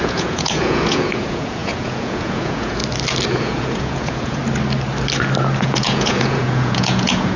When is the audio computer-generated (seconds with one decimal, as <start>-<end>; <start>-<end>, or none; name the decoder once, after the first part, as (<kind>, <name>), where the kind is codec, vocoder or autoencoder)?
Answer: 0.0-2.8 (vocoder, Vocos); 3.3-4.4; 5.6-7.4